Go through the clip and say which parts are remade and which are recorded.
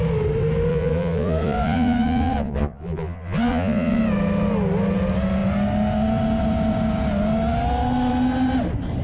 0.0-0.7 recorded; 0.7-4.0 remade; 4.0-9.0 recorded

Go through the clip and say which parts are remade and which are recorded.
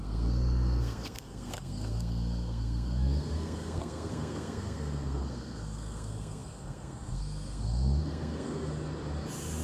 0.0-8.7 remade; 8.7-9.6 recorded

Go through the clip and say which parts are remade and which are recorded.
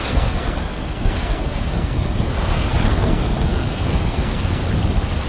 0.0-4.6 remade; 4.6-5.3 recorded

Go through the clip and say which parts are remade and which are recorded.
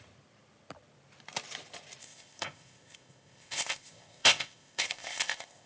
0.0-2.0 recorded; 2.0-5.7 remade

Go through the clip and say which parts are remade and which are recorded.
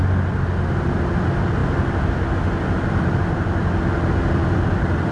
0.0-5.1 recorded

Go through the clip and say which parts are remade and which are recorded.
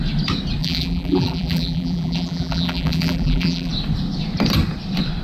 0.0-0.6 recorded; 0.6-3.7 remade; 3.7-5.2 recorded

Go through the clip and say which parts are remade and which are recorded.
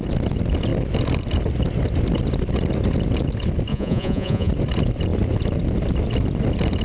0.0-3.7 recorded; 3.7-4.5 remade; 4.5-6.8 recorded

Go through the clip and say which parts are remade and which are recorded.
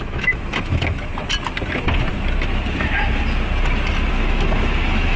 0.0-1.1 remade; 1.1-4.1 recorded; 4.1-5.2 remade